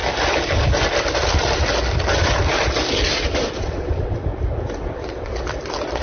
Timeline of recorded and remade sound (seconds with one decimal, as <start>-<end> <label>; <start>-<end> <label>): 0.0-3.6 recorded; 3.6-4.3 remade; 4.3-4.8 recorded; 4.8-5.3 remade; 5.3-6.0 recorded